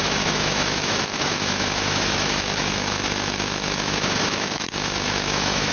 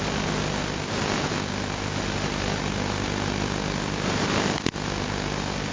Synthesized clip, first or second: first